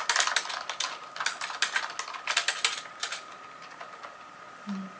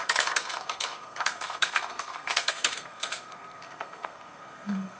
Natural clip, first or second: first